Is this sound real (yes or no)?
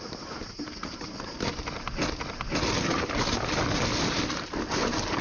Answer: yes